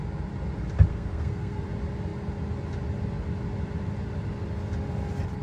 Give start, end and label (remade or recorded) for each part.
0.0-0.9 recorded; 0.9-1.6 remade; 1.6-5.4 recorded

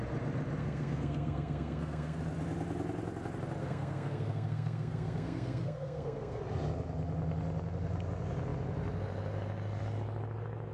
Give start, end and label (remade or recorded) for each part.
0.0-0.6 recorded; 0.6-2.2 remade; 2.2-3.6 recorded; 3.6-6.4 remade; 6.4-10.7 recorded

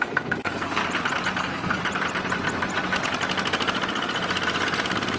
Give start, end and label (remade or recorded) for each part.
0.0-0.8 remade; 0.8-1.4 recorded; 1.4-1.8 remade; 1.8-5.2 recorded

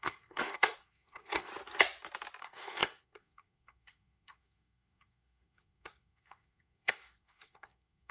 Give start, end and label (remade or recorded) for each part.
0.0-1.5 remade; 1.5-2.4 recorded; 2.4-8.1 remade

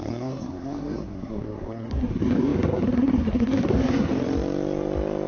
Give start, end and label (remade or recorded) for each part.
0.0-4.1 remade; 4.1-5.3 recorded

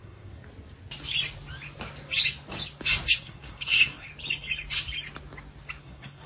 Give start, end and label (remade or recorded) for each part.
0.0-0.4 remade; 0.4-3.1 recorded; 3.1-4.1 remade; 4.1-5.8 recorded; 5.8-6.3 remade